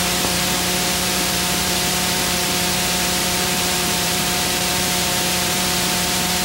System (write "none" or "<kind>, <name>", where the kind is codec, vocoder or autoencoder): vocoder, BigVGAN v2